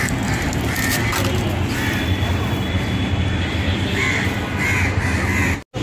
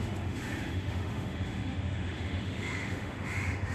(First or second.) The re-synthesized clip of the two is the second